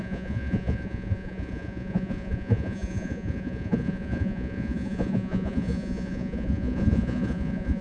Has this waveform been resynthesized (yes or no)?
yes